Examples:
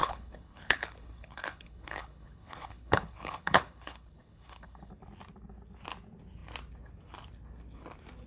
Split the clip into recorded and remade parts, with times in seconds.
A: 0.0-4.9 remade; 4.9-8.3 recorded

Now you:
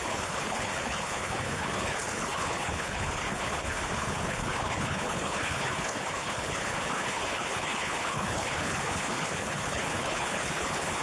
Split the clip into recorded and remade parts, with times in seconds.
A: 0.0-11.0 remade

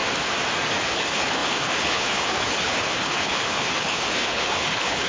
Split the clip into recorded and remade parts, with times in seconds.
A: 0.0-0.7 recorded; 0.7-5.1 remade